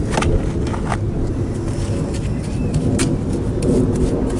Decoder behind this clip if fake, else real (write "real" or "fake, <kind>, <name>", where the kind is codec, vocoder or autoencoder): real